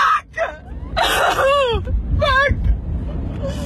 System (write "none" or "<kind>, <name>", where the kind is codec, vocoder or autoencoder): none